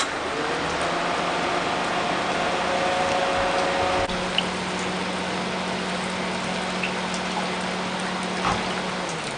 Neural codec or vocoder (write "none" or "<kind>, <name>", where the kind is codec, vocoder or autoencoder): none